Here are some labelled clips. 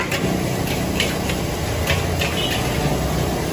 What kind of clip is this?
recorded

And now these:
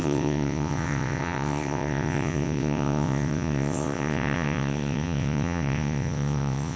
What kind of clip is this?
remade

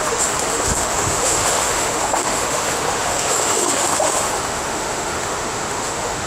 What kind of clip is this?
remade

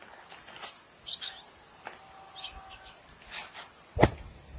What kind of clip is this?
recorded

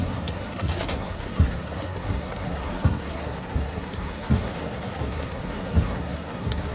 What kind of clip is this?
remade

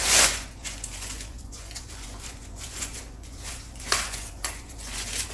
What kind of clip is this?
remade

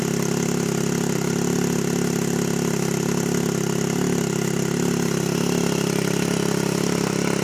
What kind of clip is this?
recorded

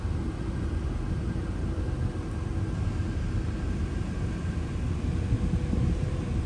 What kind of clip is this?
recorded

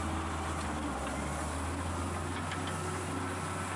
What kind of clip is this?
recorded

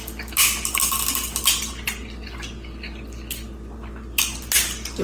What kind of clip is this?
recorded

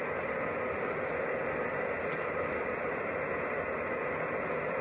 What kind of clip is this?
recorded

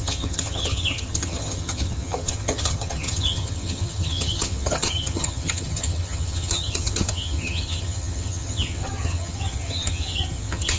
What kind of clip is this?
remade